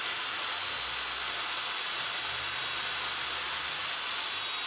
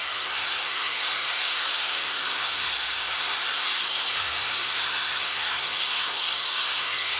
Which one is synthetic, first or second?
second